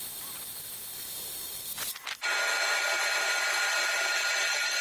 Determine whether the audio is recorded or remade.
recorded